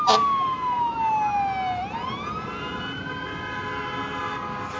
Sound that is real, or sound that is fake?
real